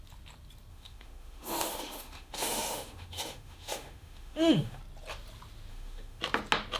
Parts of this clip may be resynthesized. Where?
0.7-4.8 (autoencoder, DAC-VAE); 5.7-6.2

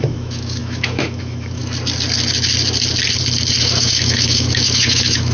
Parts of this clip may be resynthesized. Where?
0.0-1.6 (autoencoder, DAC-VAE); 3.6-5.3